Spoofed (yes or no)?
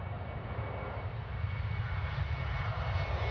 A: no